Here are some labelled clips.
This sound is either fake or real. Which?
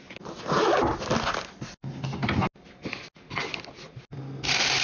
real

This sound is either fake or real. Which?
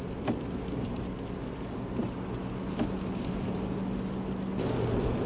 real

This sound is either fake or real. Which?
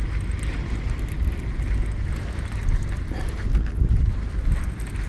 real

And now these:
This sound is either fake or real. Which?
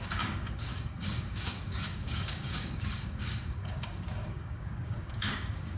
fake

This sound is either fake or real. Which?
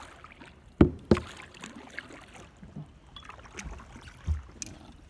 real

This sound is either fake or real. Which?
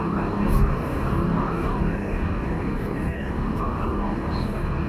fake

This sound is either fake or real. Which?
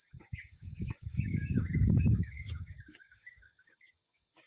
fake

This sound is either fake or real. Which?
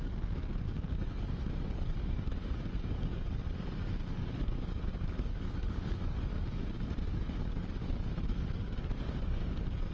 fake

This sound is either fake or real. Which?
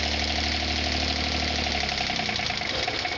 real